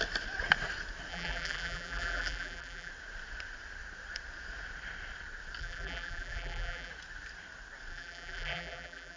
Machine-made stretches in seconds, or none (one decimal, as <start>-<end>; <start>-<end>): 1.1-2.9; 5.6-6.9; 7.9-9.2

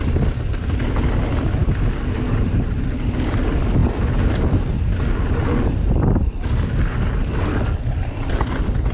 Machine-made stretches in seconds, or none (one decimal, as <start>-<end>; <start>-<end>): none

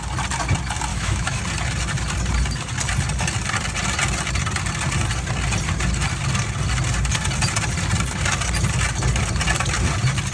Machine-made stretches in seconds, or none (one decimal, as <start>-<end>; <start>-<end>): 0.9-1.4

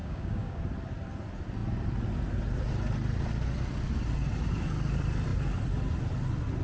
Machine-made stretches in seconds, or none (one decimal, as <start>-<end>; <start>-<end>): 0.0-0.6

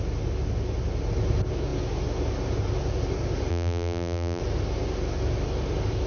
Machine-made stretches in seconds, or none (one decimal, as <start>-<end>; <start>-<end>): 3.5-4.4

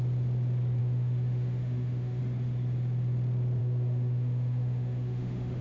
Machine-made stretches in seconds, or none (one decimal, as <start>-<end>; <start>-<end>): 0.8-2.2; 3.6-5.6